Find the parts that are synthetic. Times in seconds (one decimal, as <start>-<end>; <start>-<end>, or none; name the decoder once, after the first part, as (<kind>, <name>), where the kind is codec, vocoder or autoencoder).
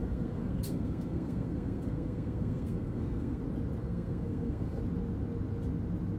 0.0-3.4 (codec, SNAC); 3.8-4.8